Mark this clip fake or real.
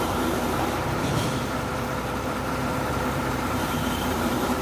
fake